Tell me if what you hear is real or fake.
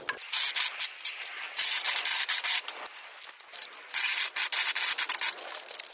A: real